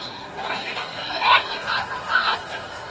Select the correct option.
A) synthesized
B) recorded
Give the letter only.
A